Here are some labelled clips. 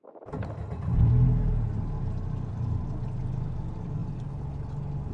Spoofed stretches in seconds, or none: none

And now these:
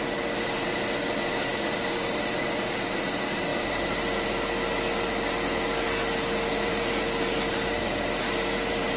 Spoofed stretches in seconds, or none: none

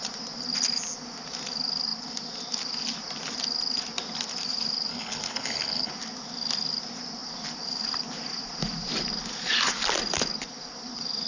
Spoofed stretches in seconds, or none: 4.9-5.9

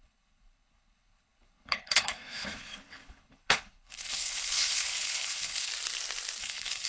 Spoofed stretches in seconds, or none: 0.0-5.7; 6.4-6.9

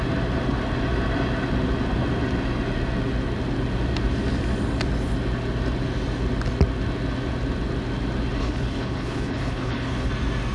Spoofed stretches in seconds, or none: 8.4-10.1

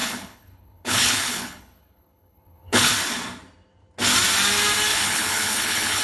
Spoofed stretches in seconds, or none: 0.0-2.9; 4.9-6.0

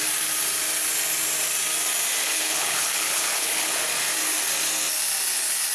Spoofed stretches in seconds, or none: 2.2-3.8